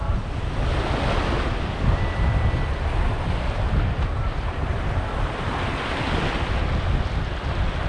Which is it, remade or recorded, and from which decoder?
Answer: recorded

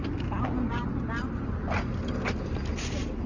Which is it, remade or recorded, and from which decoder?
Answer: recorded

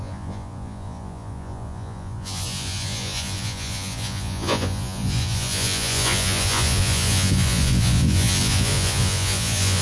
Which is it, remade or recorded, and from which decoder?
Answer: remade, vocoder, Vocos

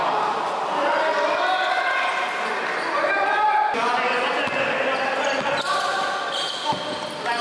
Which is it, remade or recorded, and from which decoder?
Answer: recorded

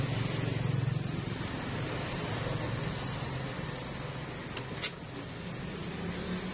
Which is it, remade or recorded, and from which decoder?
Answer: recorded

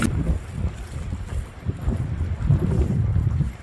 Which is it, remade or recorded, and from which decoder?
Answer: recorded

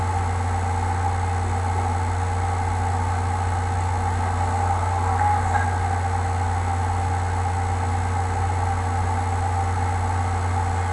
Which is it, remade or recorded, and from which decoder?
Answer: recorded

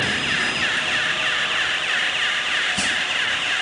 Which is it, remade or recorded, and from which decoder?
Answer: recorded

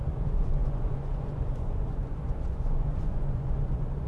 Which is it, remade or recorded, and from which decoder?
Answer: remade, vocoder, Vocos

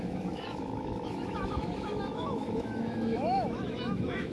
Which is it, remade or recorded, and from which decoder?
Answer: remade, autoencoder, DAC-VAE